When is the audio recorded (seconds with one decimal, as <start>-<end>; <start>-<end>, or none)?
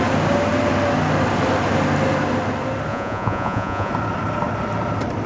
0.0-2.9; 3.9-5.3